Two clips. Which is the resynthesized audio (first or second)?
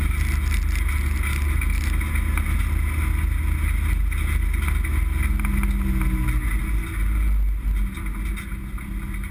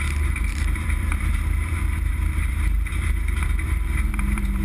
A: second